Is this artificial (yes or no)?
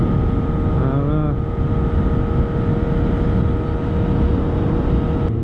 no